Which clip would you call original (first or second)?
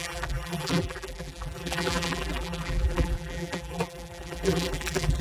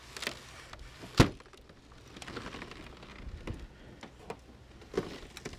second